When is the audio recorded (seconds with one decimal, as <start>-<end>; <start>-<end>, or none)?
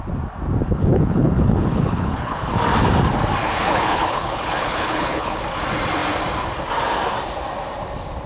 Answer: 0.0-0.6; 2.5-3.4; 5.4-8.3